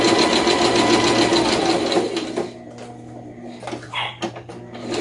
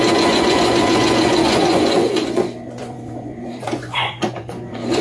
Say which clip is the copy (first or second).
second